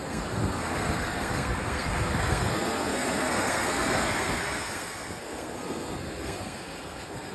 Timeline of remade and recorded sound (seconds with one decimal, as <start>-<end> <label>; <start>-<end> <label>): 0.0-7.3 remade